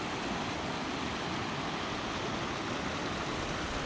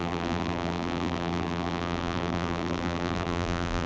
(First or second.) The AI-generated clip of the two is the second